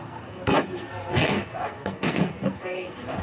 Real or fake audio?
fake